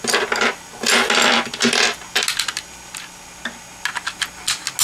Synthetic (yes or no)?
no